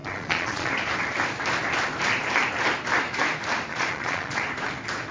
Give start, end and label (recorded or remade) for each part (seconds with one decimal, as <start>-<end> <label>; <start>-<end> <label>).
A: 0.0-0.7 remade; 0.7-3.7 recorded; 3.7-4.4 remade; 4.4-5.1 recorded